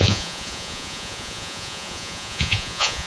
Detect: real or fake fake